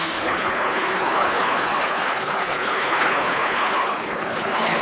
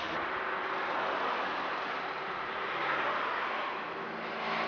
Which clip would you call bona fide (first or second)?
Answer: second